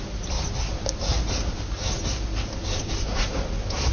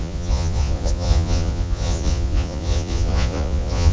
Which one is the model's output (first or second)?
second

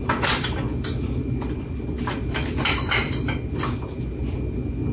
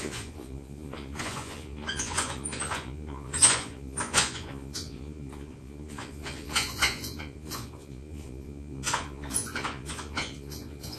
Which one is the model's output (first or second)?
second